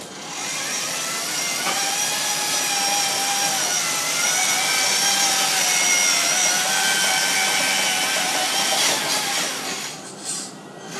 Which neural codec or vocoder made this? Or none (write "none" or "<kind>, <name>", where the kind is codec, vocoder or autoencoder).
none